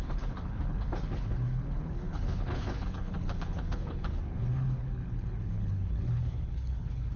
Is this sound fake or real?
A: fake